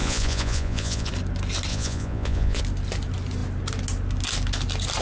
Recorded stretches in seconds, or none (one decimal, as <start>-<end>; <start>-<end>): 1.1-1.7; 2.6-5.0